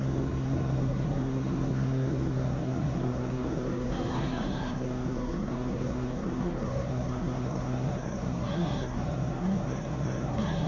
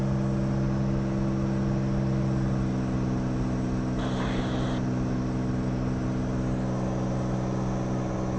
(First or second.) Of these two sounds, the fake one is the first